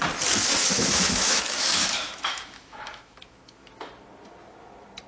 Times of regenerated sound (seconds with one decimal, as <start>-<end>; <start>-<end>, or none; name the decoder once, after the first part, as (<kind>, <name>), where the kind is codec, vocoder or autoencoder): 0.8-3.9 (autoencoder, DAC-VAE)